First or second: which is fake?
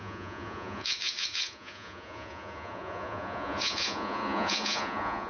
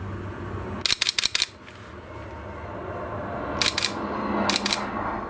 first